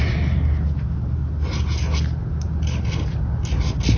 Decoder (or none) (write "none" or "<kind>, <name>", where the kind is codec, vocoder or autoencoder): none